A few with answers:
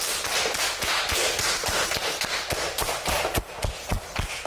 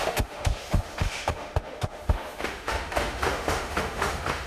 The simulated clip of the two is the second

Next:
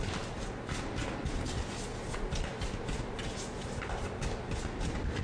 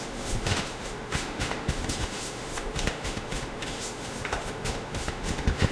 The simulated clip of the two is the second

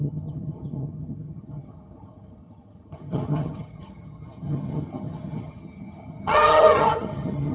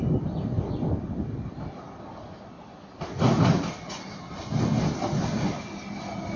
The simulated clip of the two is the first